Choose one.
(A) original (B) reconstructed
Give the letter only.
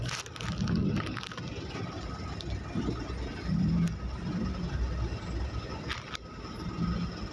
A